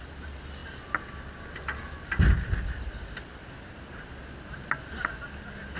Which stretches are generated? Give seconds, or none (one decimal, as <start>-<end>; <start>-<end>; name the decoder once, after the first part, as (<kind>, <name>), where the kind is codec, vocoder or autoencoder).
none